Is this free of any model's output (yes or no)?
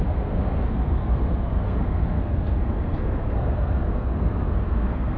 no